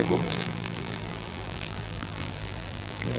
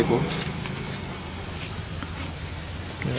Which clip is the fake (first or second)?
first